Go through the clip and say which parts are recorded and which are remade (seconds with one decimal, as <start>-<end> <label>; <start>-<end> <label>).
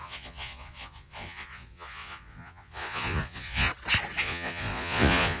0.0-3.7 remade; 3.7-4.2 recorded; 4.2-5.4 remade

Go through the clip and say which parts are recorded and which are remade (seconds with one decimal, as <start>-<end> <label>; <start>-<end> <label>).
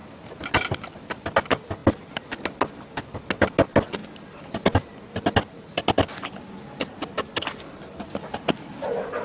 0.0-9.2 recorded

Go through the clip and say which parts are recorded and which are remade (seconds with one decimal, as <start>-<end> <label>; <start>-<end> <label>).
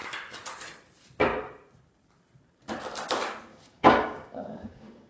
0.0-3.5 recorded; 3.5-5.1 remade